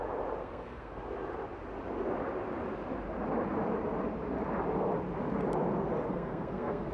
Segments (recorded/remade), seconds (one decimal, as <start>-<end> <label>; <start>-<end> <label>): 0.0-0.4 recorded; 0.4-1.0 remade; 1.0-6.1 recorded; 6.1-6.9 remade